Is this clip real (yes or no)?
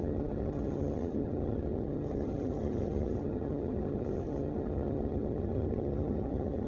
no